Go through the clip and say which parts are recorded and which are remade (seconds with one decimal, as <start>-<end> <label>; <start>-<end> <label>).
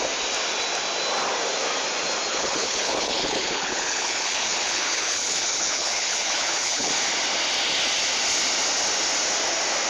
0.0-2.3 recorded; 2.3-6.9 remade; 6.9-9.9 recorded